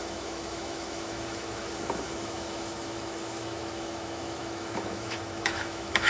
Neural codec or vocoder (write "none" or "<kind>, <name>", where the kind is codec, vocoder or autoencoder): autoencoder, DAC-VAE